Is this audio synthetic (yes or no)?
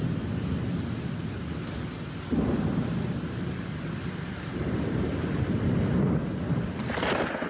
no